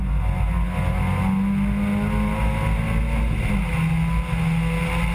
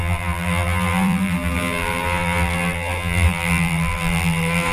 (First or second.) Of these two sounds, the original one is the first